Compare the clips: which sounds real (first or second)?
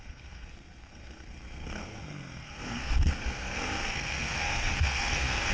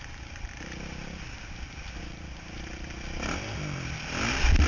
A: second